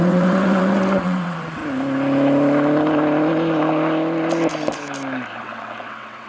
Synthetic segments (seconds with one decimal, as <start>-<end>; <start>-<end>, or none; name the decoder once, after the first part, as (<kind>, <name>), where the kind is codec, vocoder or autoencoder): 0.0-1.6 (vocoder, WaveNeXt); 5.4-6.3